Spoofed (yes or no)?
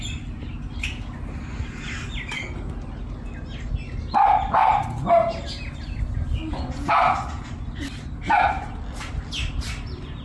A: no